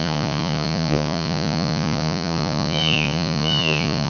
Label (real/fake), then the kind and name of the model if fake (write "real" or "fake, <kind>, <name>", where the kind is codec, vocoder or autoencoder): fake, vocoder, Vocos